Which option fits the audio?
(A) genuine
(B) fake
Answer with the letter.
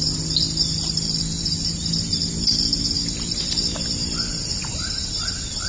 A